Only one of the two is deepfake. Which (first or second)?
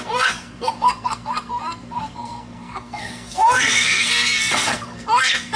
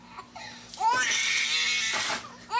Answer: first